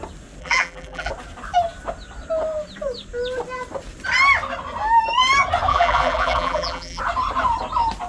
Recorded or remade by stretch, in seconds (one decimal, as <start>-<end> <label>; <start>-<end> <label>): 0.0-0.4 recorded; 0.4-1.1 remade; 1.1-5.7 recorded; 5.7-7.0 remade; 7.0-8.1 recorded